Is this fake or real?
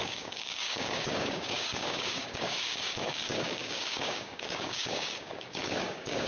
fake